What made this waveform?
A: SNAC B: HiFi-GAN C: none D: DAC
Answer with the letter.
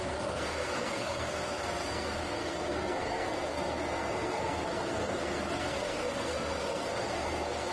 A